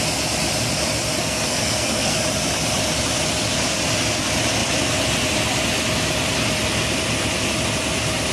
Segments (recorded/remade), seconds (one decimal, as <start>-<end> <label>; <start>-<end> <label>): 0.0-1.2 recorded; 1.2-2.2 remade; 2.2-8.3 recorded